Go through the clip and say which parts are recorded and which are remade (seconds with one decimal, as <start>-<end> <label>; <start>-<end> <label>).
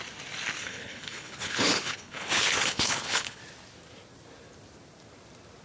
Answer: 0.0-0.6 recorded; 0.6-3.4 remade; 3.4-5.6 recorded